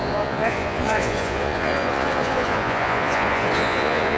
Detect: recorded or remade remade